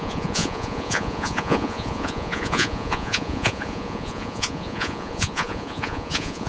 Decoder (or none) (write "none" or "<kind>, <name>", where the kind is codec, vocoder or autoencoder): vocoder, Vocos